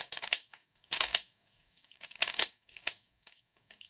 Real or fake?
fake